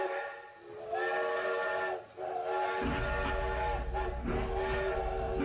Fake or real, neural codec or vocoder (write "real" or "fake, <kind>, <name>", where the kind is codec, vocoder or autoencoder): real